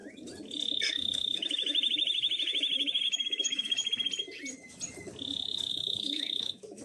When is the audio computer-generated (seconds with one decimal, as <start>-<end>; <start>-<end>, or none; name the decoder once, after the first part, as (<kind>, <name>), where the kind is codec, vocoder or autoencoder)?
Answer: 0.9-3.8 (autoencoder, DAC-VAE); 5.7-6.8